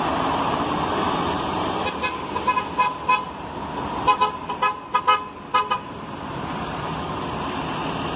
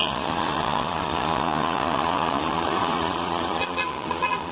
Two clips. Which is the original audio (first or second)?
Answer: first